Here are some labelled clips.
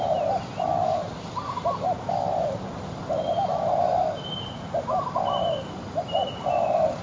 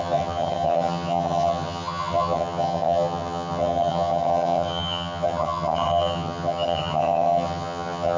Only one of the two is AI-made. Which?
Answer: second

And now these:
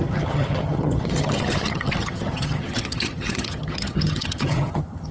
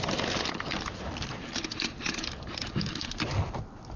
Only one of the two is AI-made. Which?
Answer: first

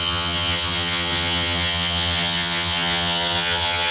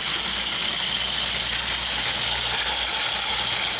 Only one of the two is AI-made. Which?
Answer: first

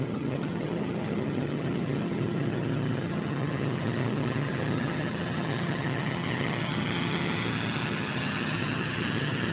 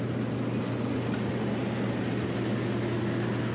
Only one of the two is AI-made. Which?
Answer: first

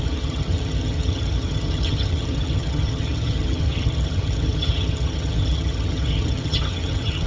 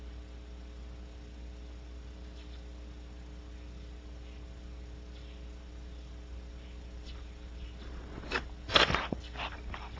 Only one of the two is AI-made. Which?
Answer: first